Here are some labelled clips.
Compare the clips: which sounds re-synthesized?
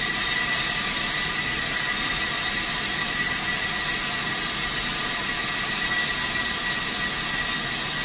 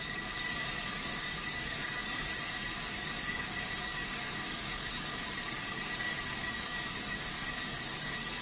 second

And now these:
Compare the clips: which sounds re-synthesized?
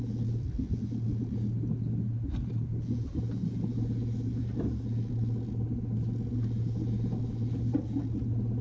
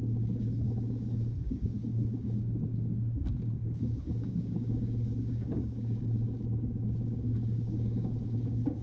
second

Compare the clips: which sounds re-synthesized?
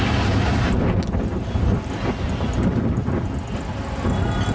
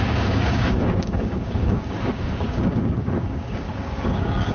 second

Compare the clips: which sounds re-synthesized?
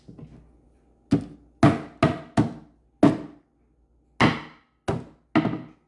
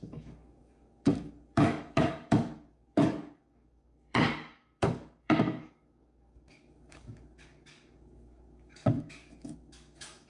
second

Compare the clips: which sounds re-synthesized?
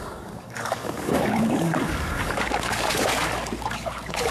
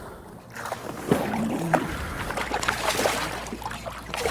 first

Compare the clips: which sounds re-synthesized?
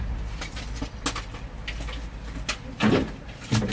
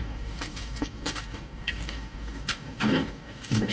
second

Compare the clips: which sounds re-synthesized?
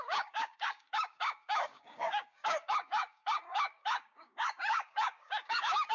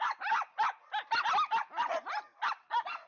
first